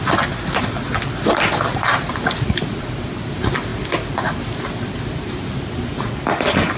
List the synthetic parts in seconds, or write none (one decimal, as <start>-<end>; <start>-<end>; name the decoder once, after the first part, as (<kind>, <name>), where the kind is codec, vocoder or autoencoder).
2.2-2.9 (vocoder, BigVGAN v2)